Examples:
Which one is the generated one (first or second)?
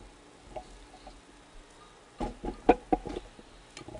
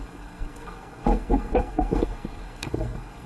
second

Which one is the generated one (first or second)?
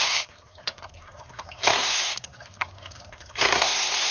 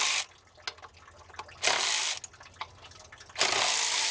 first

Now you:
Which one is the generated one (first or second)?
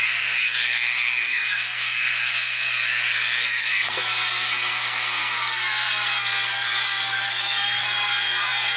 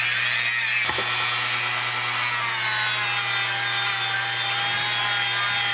first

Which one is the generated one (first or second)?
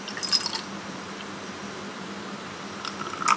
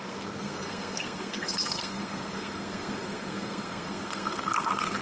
second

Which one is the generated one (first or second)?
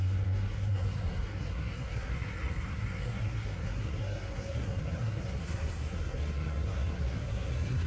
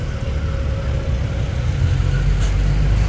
first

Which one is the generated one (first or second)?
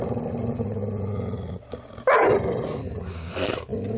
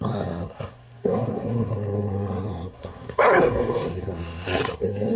second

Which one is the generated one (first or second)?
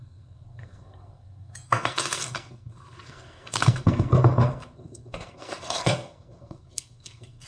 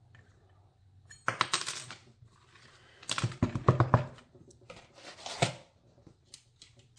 first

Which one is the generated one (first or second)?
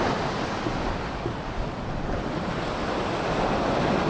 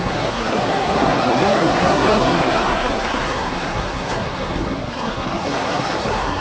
second